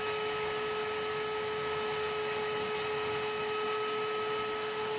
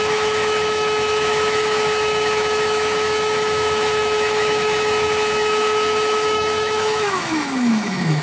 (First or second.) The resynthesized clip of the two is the second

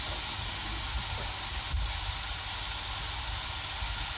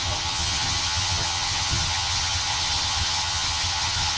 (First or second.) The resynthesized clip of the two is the second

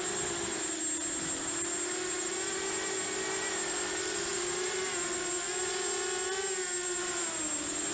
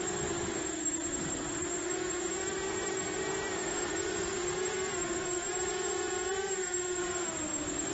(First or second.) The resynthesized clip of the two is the second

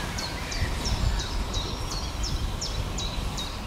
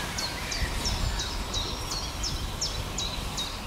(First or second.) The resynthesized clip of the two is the first